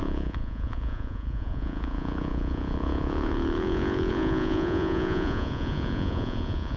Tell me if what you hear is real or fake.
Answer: fake